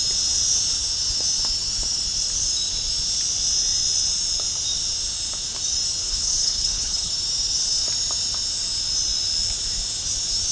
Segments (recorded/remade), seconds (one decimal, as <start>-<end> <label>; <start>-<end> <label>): 0.0-6.0 recorded; 6.0-7.1 remade; 7.1-10.5 recorded